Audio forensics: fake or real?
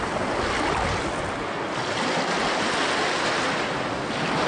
real